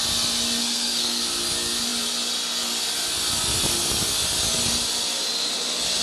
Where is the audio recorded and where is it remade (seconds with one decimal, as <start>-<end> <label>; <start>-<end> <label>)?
0.0-0.6 recorded; 0.6-1.2 remade; 1.2-6.0 recorded